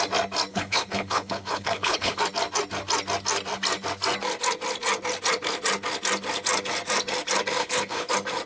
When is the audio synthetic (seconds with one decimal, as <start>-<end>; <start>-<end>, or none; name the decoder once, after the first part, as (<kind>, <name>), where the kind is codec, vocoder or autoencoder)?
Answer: 0.5-2.2 (codec, HILCodec); 7.6-8.1